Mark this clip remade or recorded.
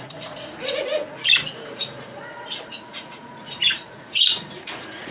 remade